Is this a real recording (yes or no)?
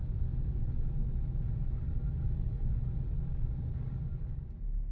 yes